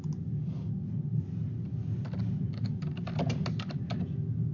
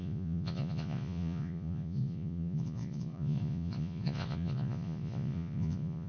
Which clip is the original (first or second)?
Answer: first